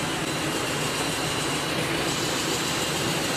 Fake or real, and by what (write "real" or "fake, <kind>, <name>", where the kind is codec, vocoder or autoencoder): real